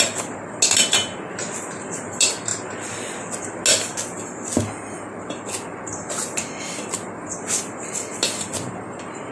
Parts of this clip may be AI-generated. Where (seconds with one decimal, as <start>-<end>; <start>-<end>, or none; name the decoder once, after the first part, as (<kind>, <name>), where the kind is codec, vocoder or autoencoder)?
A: none